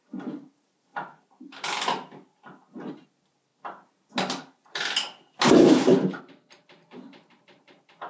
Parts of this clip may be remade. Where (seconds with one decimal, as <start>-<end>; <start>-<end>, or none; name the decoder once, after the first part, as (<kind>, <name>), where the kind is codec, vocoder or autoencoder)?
none